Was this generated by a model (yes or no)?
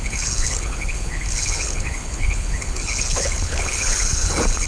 yes